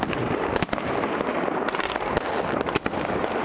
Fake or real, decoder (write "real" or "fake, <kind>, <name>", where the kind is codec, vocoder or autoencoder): real